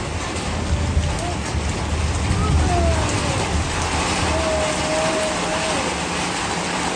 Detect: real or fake real